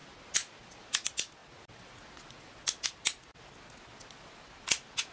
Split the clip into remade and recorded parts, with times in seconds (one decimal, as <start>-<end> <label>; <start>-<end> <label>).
0.0-5.1 recorded

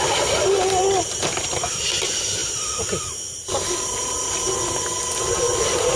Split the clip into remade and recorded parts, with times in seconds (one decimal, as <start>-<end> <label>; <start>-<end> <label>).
0.0-6.0 recorded

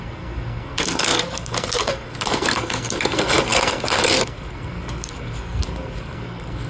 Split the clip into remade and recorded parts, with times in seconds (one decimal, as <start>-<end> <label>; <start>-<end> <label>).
0.0-6.7 remade

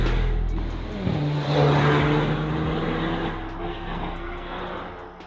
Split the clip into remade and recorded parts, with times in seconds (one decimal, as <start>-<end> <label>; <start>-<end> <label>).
0.0-3.7 recorded; 3.7-4.6 remade; 4.6-5.3 recorded

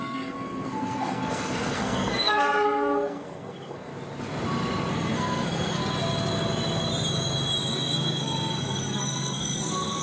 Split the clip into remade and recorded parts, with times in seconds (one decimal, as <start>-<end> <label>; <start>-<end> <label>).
0.0-3.9 remade; 3.9-4.9 recorded; 4.9-5.8 remade; 5.8-7.6 recorded; 7.6-10.0 remade

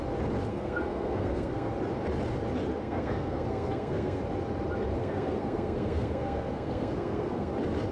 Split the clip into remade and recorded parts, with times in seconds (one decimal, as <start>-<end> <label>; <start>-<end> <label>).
0.0-0.5 recorded; 0.5-1.7 remade; 1.7-2.8 recorded; 2.8-4.2 remade; 4.2-5.0 recorded; 5.0-7.5 remade; 7.5-7.9 recorded

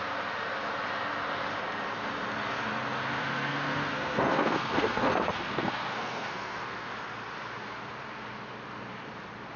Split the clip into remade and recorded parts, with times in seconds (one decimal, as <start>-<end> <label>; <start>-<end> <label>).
0.0-3.2 recorded; 3.2-6.9 remade; 6.9-9.6 recorded